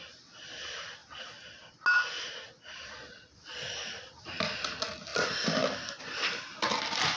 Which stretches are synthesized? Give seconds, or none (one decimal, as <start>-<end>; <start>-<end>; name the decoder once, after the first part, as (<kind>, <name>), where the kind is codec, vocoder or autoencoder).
none